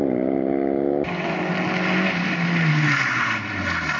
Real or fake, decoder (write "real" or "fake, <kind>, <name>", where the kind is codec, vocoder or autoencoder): real